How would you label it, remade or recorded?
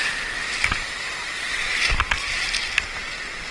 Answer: recorded